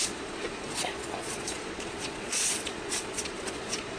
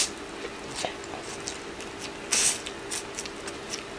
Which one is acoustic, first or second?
second